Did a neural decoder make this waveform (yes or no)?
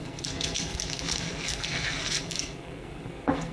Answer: yes